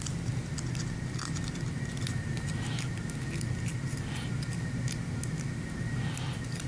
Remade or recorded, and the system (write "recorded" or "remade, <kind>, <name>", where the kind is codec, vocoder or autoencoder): recorded